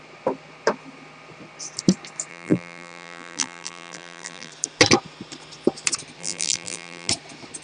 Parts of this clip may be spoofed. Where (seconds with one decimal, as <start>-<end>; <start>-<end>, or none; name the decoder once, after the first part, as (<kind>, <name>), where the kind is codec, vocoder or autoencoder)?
2.3-4.5 (vocoder, BigVGAN v2); 6.2-7.1